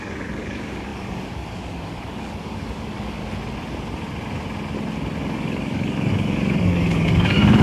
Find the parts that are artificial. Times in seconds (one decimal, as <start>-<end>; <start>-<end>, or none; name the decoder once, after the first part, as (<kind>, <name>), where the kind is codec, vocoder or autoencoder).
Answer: 0.0-3.2 (codec, DAC); 5.2-7.6